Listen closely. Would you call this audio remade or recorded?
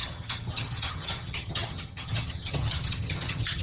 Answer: remade